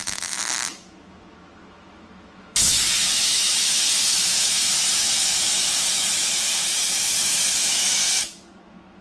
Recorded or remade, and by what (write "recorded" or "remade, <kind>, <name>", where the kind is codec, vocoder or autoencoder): remade, autoencoder, DAC-VAE